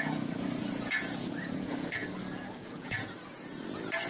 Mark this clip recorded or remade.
remade